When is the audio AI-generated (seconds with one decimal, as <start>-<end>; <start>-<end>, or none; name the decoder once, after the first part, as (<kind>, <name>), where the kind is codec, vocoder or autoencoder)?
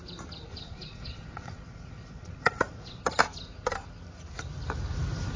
0.5-3.0 (vocoder, Vocos)